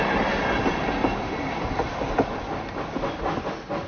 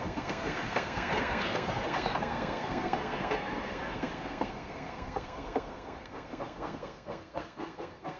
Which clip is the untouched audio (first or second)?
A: first